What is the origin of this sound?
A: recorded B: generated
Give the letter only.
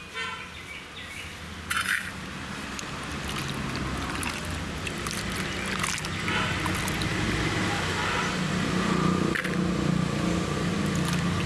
A